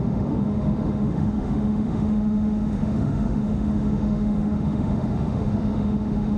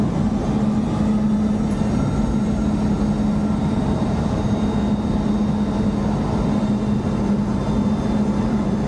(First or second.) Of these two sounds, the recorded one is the second